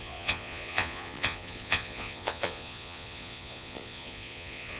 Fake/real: fake